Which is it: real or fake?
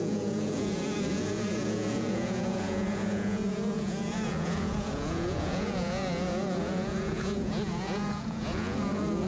fake